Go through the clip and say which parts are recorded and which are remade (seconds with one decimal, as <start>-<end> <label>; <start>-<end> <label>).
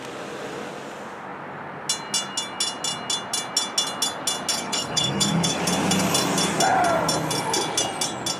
0.0-4.5 recorded; 4.5-5.6 remade; 5.6-8.4 recorded